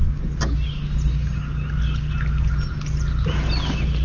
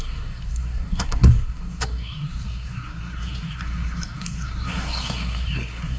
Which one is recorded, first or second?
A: first